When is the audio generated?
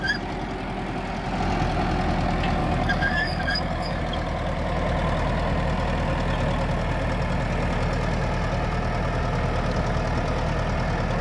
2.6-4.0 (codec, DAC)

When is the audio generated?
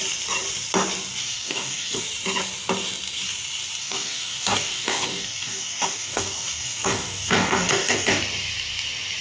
1.2-2.0 (codec, DAC); 3.8-8.2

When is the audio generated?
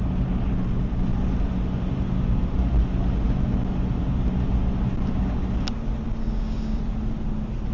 6.2-6.8 (codec, DAC)